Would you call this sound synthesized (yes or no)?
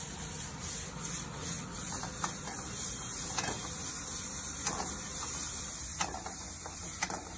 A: no